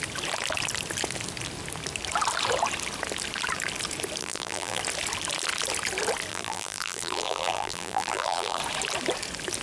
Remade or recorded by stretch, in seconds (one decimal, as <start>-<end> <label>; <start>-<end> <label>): 0.0-4.2 recorded; 4.2-4.8 remade; 4.8-6.3 recorded; 6.3-8.6 remade; 8.6-9.6 recorded